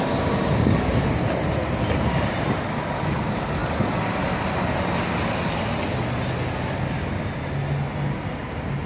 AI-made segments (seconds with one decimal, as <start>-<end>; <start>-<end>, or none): none

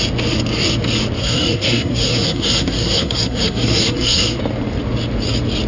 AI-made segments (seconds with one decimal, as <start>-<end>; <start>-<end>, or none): 1.2-4.4

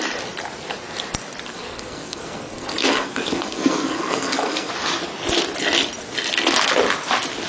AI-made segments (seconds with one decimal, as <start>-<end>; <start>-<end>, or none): 1.5-4.7